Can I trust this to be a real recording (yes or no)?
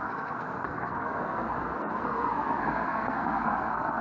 no